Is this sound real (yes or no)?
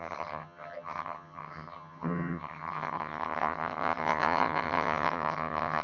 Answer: no